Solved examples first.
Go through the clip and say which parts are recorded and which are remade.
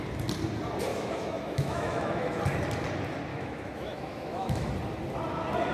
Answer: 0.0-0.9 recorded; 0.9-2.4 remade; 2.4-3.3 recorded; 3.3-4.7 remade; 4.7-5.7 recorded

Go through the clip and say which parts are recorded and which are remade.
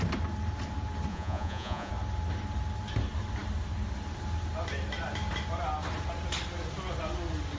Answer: 0.0-1.1 recorded; 1.1-1.9 remade; 1.9-7.6 recorded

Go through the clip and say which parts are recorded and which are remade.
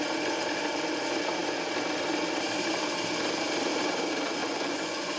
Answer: 0.0-4.4 recorded; 4.4-5.2 remade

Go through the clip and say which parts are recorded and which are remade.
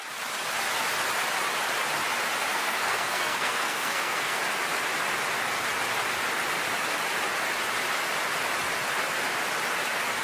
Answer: 0.0-2.5 recorded; 2.5-4.4 remade; 4.4-10.2 recorded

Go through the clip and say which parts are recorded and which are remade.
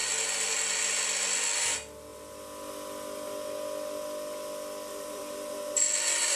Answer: 0.0-4.9 recorded; 4.9-5.8 remade; 5.8-6.4 recorded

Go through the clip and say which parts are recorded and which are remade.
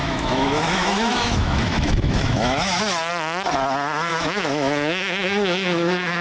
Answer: 0.0-2.8 remade; 2.8-4.1 recorded; 4.1-6.2 remade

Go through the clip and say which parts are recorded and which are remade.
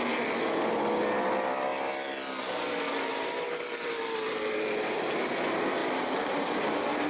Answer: 0.0-3.1 recorded; 3.1-3.9 remade; 3.9-5.8 recorded; 5.8-7.1 remade